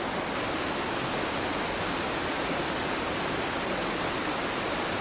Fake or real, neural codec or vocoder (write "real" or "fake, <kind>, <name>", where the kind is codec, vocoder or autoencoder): real